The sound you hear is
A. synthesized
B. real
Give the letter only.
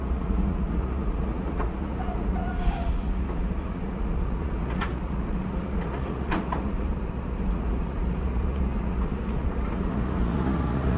A